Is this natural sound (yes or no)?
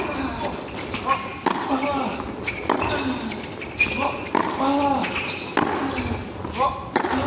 yes